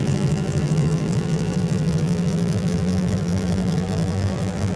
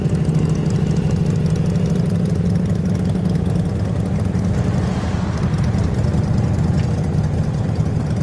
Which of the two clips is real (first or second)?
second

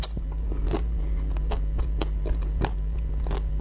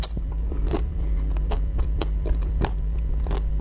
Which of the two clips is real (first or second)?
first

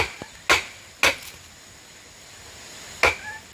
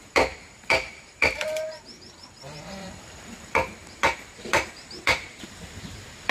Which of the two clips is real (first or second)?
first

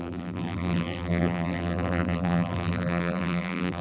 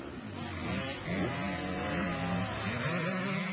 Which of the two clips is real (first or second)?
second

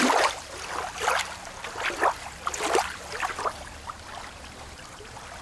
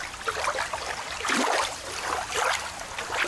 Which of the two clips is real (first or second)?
first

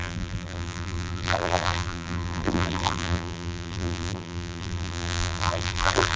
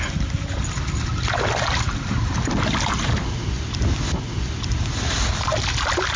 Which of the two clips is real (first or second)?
second